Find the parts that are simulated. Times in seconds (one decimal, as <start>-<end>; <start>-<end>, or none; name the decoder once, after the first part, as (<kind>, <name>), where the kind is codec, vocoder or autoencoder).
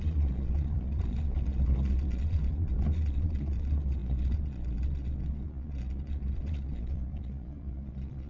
0.0-8.3 (vocoder, Vocos)